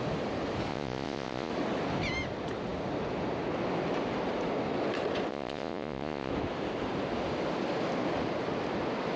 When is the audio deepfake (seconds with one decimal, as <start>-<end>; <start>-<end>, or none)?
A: 0.7-1.5; 5.3-6.3